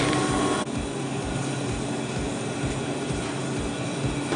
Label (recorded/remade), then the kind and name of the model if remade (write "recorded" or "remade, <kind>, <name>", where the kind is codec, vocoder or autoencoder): recorded